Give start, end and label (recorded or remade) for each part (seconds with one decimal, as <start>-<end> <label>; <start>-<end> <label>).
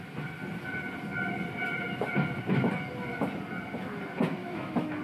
0.0-4.4 recorded; 4.4-5.0 remade